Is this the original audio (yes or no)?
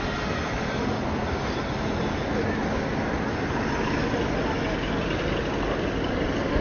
yes